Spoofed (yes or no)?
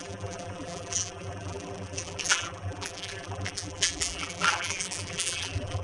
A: yes